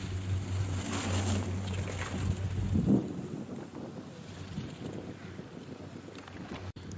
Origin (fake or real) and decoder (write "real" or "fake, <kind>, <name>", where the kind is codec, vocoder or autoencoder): real